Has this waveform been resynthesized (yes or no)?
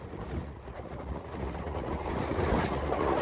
yes